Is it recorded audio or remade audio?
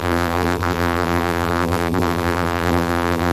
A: remade